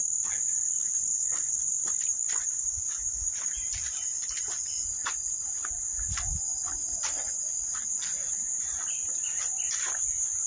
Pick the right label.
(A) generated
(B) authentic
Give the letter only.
B